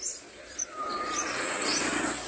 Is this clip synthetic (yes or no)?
no